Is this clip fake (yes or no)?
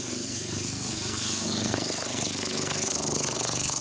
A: yes